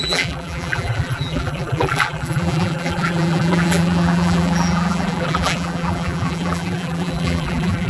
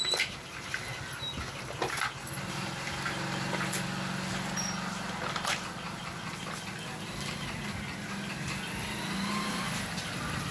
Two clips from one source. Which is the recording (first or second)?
second